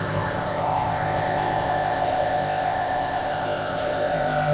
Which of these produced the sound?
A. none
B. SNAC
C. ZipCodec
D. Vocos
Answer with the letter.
C